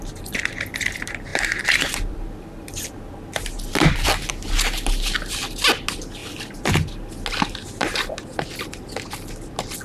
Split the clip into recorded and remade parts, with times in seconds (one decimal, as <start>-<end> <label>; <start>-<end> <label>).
0.0-1.3 recorded; 1.3-3.1 remade; 3.1-3.7 recorded; 3.7-4.3 remade; 4.3-9.8 recorded